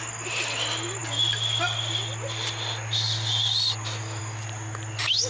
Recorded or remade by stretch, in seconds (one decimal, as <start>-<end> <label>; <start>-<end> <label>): 0.0-5.3 recorded

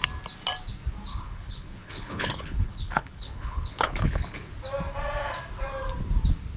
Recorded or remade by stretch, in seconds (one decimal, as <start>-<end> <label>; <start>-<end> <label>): 0.0-1.1 recorded; 1.1-4.5 remade; 4.5-6.6 recorded

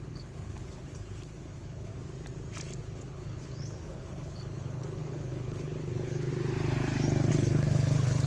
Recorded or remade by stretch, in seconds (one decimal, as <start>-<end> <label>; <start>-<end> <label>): 0.0-1.9 remade; 1.9-2.8 recorded; 2.8-6.3 remade; 6.3-7.3 recorded; 7.3-8.3 remade

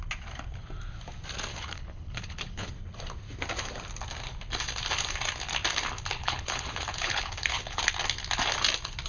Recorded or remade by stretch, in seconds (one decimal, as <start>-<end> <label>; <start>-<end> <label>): 0.0-1.5 recorded; 1.5-2.7 remade; 2.7-6.2 recorded; 6.2-7.8 remade; 7.8-9.1 recorded

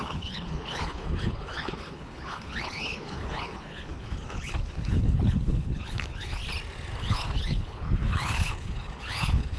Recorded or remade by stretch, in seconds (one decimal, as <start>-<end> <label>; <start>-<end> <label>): 0.0-6.4 remade; 6.4-7.0 recorded; 7.0-9.6 remade